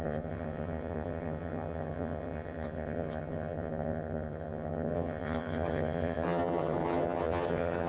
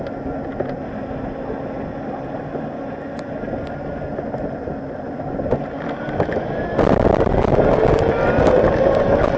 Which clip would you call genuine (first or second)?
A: second